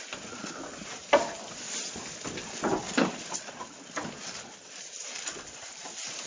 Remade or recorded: recorded